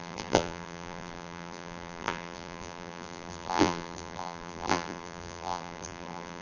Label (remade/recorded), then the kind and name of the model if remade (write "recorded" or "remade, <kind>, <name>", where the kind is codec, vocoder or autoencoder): remade, vocoder, BigVGAN v2